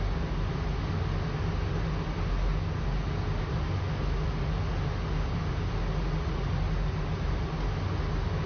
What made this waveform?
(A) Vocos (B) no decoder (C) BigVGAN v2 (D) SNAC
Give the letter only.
B